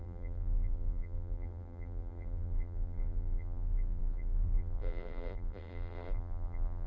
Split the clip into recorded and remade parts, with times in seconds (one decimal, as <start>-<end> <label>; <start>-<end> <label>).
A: 0.0-6.9 remade